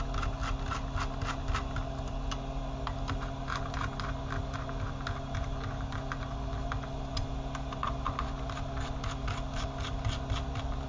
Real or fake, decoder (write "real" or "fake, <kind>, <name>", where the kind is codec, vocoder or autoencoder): real